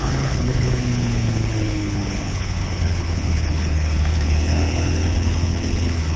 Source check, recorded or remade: remade